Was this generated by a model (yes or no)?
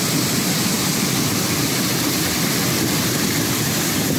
no